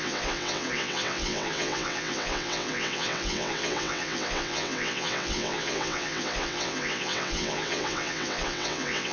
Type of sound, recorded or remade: remade